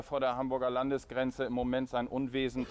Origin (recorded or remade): recorded